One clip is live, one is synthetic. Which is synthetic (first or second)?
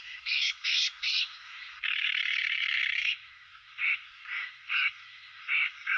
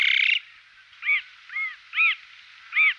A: first